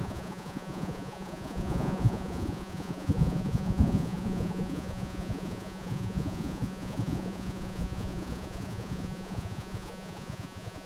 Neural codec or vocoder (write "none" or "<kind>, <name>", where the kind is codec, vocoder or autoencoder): vocoder, Vocos